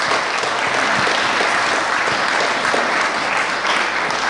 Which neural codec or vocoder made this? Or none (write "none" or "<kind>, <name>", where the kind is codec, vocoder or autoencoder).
none